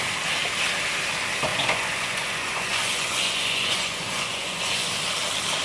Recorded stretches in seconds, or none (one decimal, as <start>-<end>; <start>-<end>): 0.0-1.5; 4.9-5.6